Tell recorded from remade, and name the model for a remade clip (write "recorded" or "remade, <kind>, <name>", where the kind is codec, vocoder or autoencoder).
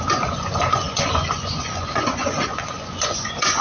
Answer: remade, vocoder, Vocos